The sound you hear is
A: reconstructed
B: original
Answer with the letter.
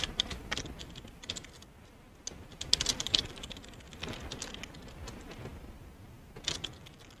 B